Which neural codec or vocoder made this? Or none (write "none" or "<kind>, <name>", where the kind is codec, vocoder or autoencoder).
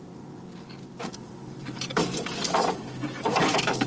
vocoder, BigVGAN v2